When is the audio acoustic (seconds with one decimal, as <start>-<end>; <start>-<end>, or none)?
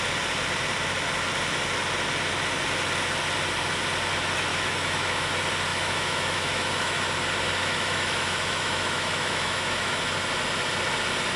0.0-4.5; 5.3-5.7; 7.0-7.6; 10.0-11.4